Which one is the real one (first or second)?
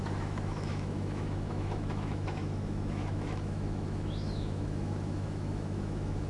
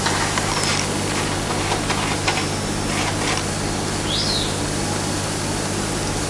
second